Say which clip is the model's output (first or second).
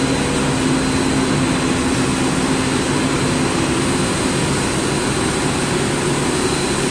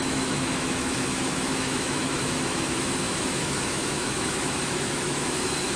second